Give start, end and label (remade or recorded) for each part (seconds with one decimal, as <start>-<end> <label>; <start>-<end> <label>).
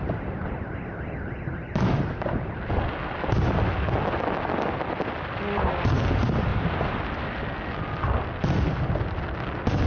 0.0-6.5 recorded; 6.5-7.0 remade; 7.0-9.9 recorded